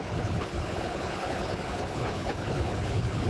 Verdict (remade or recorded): remade